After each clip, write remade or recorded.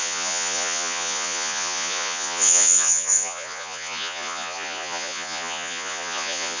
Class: remade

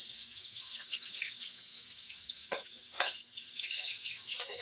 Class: remade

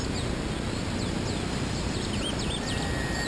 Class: recorded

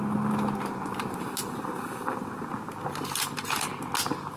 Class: recorded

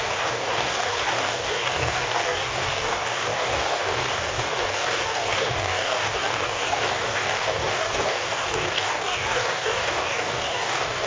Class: remade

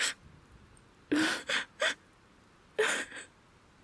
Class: recorded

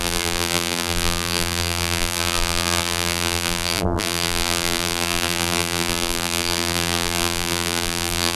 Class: remade